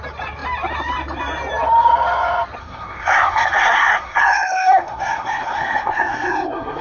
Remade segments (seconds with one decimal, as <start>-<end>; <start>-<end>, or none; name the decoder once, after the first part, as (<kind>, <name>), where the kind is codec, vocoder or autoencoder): 2.6-6.8 (codec, SNAC)